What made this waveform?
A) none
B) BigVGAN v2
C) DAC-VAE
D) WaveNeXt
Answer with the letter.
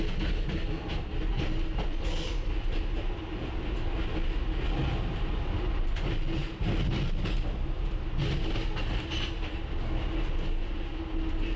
A